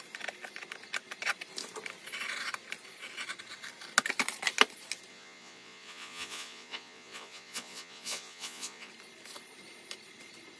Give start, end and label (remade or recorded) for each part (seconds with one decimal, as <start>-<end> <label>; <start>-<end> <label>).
0.0-5.1 recorded; 5.1-8.9 remade; 8.9-10.6 recorded

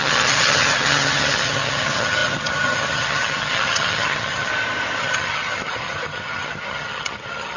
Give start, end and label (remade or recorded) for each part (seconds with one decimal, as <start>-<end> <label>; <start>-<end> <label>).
0.0-4.5 remade; 4.5-5.0 recorded; 5.0-7.6 remade

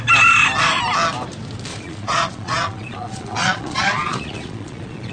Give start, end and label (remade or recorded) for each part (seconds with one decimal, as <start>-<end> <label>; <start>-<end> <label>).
0.0-1.7 recorded; 1.7-5.1 remade

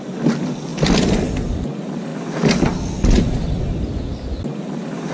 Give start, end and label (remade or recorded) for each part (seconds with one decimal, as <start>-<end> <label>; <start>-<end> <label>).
0.0-5.1 recorded

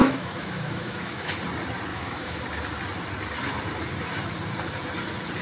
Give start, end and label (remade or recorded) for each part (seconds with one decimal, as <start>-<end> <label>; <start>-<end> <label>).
0.0-1.3 remade; 1.3-1.9 recorded; 1.9-2.4 remade; 2.4-5.4 recorded

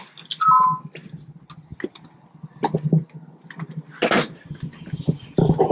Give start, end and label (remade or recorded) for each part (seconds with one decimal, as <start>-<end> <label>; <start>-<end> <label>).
0.0-5.7 recorded